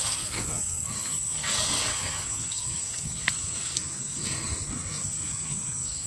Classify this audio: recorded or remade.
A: remade